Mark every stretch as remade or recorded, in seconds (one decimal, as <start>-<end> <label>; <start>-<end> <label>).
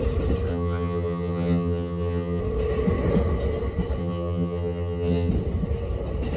0.0-0.5 recorded; 0.5-2.4 remade; 2.4-4.0 recorded; 4.0-5.3 remade; 5.3-6.4 recorded